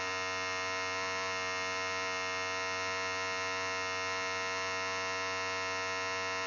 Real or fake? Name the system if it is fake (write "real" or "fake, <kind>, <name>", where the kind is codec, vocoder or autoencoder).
real